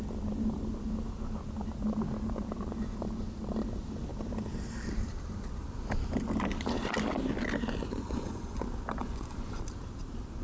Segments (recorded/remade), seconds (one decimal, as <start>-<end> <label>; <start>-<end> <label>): 0.0-7.8 recorded; 7.8-8.6 remade; 8.6-9.0 recorded; 9.0-9.6 remade; 9.6-10.4 recorded